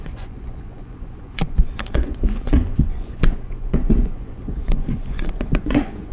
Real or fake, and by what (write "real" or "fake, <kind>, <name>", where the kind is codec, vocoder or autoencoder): fake, vocoder, Vocos